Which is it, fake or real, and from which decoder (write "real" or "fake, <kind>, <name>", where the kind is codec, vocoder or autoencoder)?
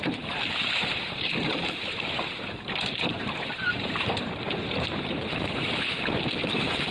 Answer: fake, vocoder, BigVGAN v2